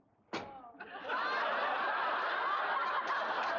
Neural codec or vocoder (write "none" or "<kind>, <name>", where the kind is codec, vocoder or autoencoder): none